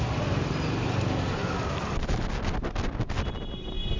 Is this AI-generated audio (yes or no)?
no